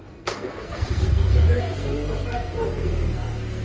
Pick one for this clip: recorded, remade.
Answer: remade